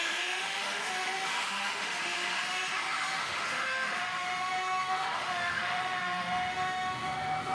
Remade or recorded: remade